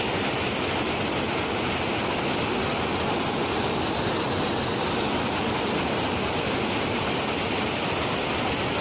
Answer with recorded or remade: recorded